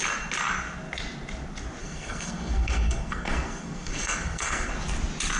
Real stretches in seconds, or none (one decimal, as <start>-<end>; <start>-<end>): 0.0-1.8; 4.7-5.4